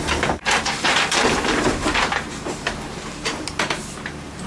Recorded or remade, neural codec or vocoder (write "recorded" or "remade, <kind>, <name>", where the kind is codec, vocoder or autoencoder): remade, vocoder, BigVGAN v2